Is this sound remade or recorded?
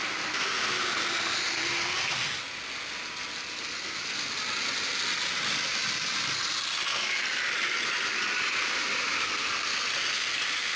recorded